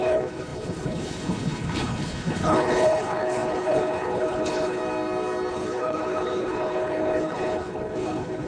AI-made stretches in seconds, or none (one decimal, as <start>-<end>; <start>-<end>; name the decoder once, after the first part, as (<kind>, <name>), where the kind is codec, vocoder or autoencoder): 0.0-4.8 (codec, HILCodec); 5.5-8.5